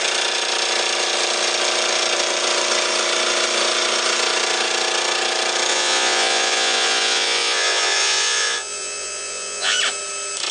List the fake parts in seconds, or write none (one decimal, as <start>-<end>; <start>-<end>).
5.7-9.8